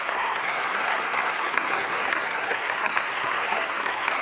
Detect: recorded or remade remade